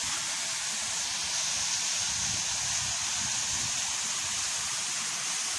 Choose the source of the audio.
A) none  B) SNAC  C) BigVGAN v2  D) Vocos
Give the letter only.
A